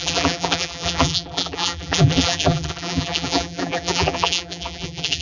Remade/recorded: remade